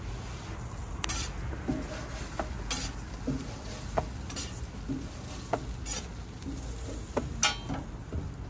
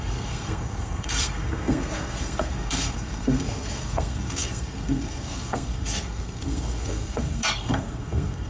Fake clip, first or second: second